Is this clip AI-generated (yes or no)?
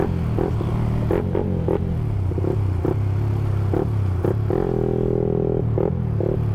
no